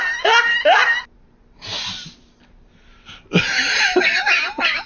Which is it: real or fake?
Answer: real